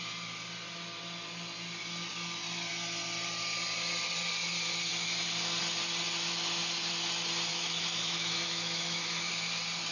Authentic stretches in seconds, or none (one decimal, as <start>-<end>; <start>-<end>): 0.0-7.5; 9.3-9.9